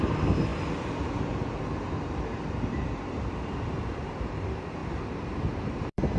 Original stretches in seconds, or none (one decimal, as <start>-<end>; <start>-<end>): 0.5-2.7